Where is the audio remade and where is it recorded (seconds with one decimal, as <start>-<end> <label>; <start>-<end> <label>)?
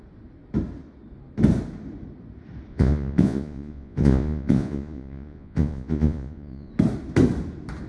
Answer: 0.0-2.7 recorded; 2.7-6.7 remade; 6.7-7.9 recorded